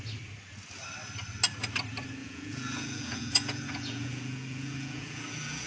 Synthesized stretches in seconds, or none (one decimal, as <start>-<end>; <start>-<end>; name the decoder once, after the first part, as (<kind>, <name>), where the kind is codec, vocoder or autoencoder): 2.2-5.7 (vocoder, Vocos)

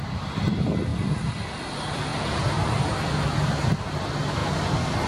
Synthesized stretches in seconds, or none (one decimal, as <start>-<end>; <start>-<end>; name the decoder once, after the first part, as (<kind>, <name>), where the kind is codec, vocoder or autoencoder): none

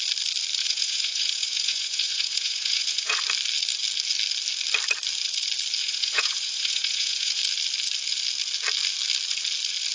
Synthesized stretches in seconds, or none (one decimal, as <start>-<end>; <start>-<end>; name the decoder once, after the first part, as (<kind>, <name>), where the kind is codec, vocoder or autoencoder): 0.6-3.2 (vocoder, Vocos); 5.8-7.4

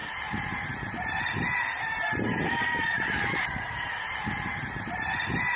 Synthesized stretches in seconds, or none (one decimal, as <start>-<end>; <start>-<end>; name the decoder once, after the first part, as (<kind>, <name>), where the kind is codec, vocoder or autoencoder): 0.0-5.6 (vocoder, BigVGAN v2)

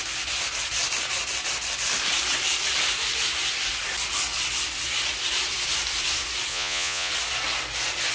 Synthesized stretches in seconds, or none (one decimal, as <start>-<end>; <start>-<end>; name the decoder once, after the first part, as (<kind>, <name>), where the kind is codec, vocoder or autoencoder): 6.5-7.1 (vocoder, Vocos)

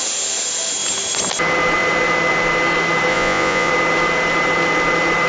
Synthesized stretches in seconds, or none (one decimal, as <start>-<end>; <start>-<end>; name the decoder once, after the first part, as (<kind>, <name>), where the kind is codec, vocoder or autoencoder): 3.1-3.7 (vocoder, Vocos)